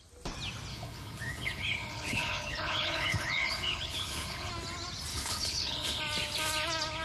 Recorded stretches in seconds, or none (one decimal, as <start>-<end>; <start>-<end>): 0.0-0.7; 4.5-5.1; 6.0-7.0